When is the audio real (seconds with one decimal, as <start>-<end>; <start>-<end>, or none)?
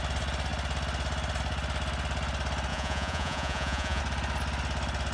0.0-2.7; 4.0-5.1